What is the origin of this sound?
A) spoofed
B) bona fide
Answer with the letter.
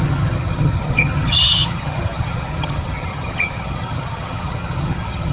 A